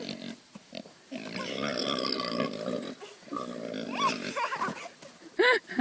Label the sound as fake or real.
real